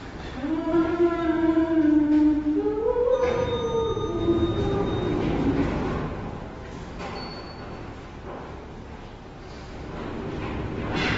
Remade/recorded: recorded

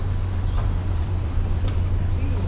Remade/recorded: remade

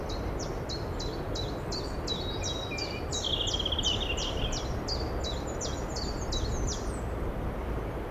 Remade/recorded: recorded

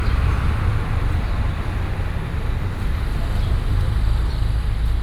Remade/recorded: remade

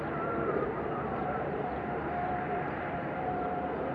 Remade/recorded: remade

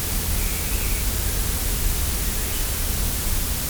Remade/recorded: remade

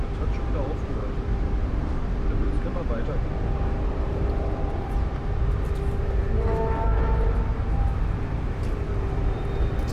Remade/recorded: remade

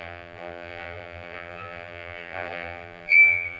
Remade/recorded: remade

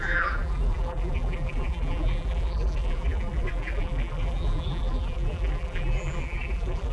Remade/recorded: remade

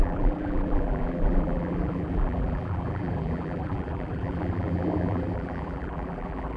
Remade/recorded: remade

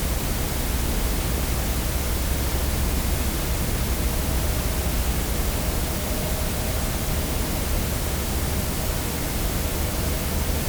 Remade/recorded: recorded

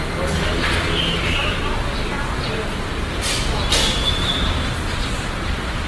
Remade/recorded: recorded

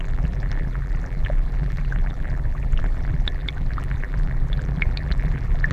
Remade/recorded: remade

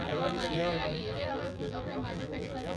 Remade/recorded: remade